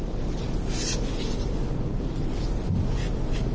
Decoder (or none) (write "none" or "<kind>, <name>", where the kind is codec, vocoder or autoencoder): none